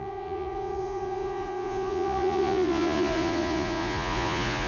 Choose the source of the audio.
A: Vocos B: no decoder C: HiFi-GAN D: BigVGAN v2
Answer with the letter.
A